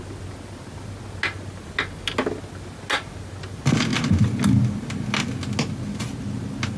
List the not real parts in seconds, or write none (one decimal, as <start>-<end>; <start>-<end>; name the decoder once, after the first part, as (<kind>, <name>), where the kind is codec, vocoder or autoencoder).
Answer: none